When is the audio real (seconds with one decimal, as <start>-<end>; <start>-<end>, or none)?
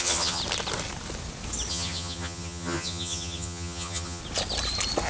0.4-1.7; 4.2-5.1